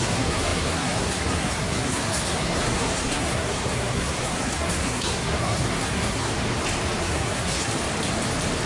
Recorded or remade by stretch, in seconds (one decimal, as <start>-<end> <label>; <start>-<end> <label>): 0.0-6.3 remade; 6.3-7.0 recorded; 7.0-7.7 remade; 7.7-8.7 recorded